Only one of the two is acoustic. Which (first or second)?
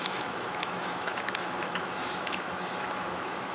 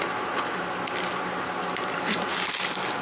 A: second